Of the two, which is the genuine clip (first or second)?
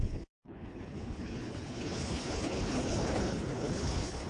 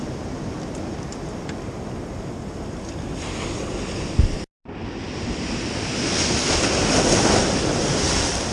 second